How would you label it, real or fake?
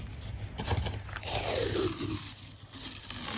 real